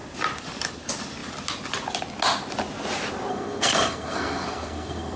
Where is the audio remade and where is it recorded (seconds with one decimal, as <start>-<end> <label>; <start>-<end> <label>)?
0.0-3.3 recorded; 3.3-5.2 remade